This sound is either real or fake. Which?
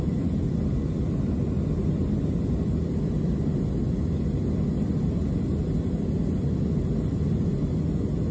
real